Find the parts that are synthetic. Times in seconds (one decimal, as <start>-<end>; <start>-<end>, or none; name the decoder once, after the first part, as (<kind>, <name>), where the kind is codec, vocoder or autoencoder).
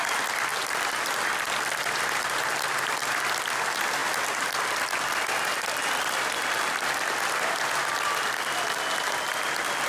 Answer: 0.5-3.2 (vocoder, BigVGAN v2); 4.0-8.7